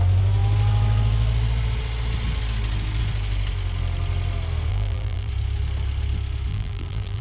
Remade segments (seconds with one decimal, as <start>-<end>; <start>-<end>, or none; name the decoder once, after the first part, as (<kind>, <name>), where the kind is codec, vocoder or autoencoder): 4.7-5.3 (vocoder, BigVGAN v2); 6.5-7.2